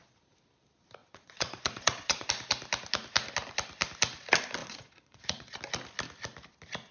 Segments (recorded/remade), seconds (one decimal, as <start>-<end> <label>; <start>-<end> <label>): 0.0-1.0 recorded; 1.0-2.3 remade; 2.3-4.6 recorded; 4.6-5.6 remade; 5.6-6.9 recorded